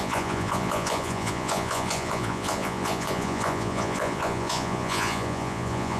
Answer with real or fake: fake